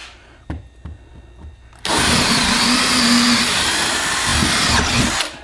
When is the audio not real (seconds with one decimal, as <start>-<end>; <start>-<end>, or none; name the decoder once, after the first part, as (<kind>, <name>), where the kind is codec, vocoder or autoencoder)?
none